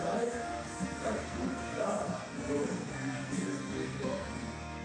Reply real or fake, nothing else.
fake